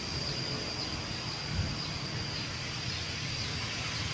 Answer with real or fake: real